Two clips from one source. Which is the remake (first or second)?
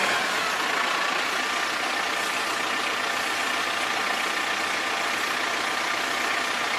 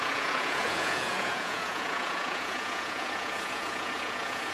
second